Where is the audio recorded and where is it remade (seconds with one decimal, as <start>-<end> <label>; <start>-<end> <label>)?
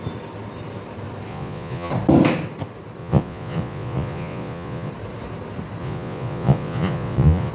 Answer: 0.0-1.3 recorded; 1.3-1.9 remade; 1.9-3.0 recorded; 3.0-4.9 remade; 4.9-5.8 recorded; 5.8-7.5 remade